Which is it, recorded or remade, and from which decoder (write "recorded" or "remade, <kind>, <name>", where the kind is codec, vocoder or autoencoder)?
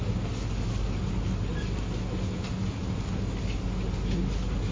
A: recorded